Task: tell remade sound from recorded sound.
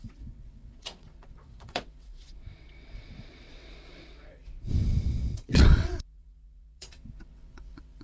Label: remade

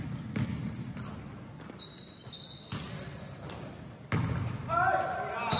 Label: recorded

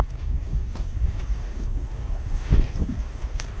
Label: remade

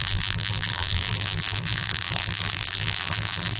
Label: remade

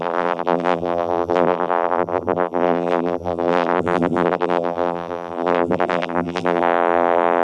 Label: remade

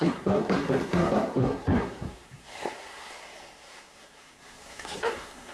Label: remade